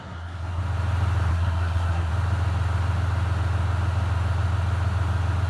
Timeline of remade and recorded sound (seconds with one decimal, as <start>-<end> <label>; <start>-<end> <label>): 0.0-0.6 remade; 0.6-1.3 recorded; 1.3-2.1 remade; 2.1-5.5 recorded